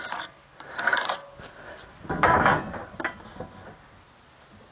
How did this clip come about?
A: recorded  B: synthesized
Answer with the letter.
A